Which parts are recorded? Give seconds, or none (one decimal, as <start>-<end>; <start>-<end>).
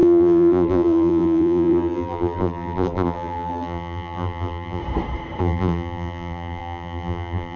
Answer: 4.8-5.4